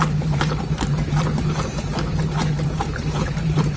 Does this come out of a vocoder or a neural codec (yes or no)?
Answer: yes